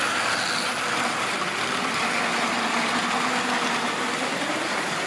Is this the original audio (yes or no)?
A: yes